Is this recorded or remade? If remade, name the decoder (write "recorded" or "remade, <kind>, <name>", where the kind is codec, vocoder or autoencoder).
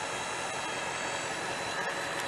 recorded